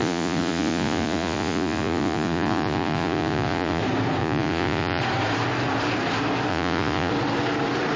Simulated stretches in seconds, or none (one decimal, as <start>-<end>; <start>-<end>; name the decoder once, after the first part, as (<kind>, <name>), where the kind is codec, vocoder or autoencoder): 0.0-3.8 (vocoder, Vocos); 4.2-5.0; 6.5-7.1